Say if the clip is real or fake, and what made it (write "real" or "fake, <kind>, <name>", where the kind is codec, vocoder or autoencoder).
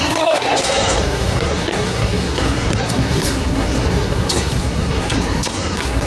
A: fake, codec, SNAC